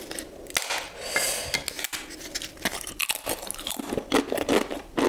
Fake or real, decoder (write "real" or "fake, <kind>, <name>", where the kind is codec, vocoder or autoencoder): real